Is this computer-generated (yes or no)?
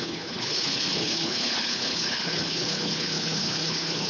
yes